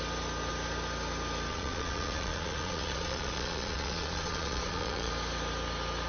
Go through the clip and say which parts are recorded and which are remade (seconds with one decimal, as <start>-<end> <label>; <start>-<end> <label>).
0.0-1.5 recorded; 1.5-5.1 remade; 5.1-6.1 recorded